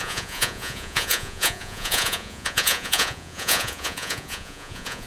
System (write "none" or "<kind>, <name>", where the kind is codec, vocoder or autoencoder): vocoder, Vocos